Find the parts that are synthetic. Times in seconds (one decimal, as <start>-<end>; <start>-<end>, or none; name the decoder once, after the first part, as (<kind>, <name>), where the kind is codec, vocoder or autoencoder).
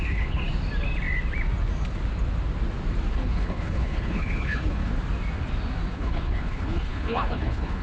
0.0-0.4 (codec, HILCodec); 3.1-4.9; 5.9-7.8